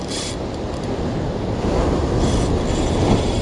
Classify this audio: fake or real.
real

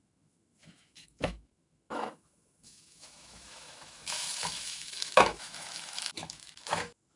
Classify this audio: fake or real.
fake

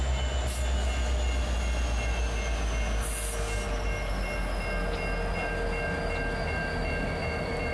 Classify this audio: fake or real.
real